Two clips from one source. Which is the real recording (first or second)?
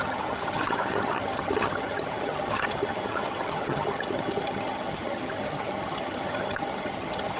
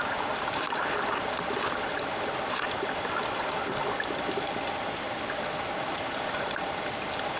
second